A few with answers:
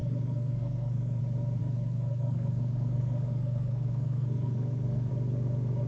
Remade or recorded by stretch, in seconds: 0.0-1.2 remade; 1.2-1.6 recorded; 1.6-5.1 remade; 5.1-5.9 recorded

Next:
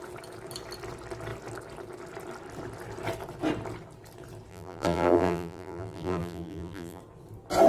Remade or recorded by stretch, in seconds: 0.0-4.5 recorded; 4.5-7.0 remade; 7.0-7.7 recorded

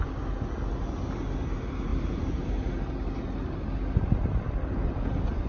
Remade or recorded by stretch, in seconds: 0.0-5.5 recorded

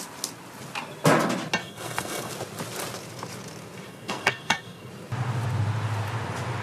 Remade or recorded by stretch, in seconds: 0.0-1.6 recorded; 1.6-2.3 remade; 2.3-3.9 recorded; 3.9-4.9 remade; 4.9-6.6 recorded

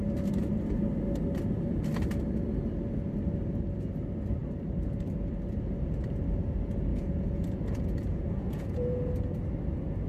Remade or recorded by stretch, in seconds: 0.0-6.9 recorded; 6.9-9.1 remade; 9.1-10.1 recorded

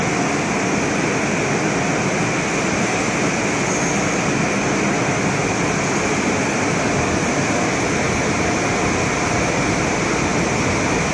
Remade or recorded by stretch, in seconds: 0.0-11.1 recorded

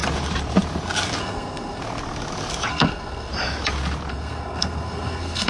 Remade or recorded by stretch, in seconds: 0.0-1.2 recorded; 1.2-1.8 remade; 1.8-2.7 recorded; 2.7-3.3 remade; 3.3-4.1 recorded; 4.1-5.5 remade

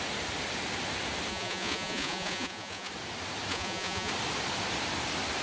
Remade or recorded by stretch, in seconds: 0.0-1.3 recorded; 1.3-2.9 remade; 2.9-3.5 recorded; 3.5-4.1 remade; 4.1-5.4 recorded